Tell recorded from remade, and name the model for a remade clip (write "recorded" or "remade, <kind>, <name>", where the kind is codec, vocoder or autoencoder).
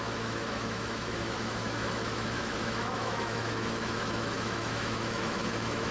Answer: remade, autoencoder, DAC-VAE